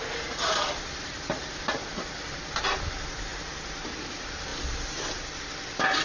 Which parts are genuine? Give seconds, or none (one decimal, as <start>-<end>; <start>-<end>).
0.0-6.0